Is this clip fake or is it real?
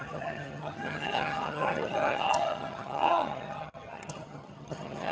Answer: fake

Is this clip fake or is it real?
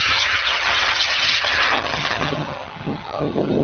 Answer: fake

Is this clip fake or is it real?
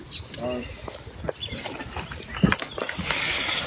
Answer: real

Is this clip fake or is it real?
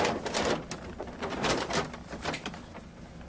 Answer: real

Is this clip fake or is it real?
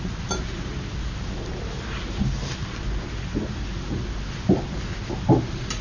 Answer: real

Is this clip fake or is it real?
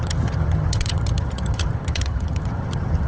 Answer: fake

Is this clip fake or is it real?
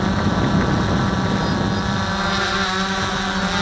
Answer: real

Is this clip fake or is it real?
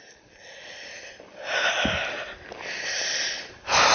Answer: real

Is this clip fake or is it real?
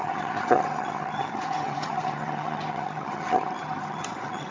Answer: fake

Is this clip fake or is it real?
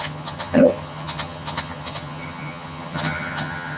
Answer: fake